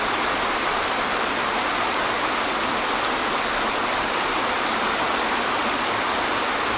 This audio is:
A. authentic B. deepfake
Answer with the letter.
A